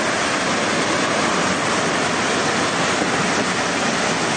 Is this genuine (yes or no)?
yes